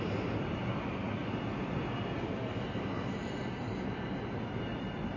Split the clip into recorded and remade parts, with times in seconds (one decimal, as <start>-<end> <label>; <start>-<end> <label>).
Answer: 0.0-5.2 recorded